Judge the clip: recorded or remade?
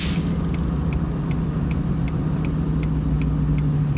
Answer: recorded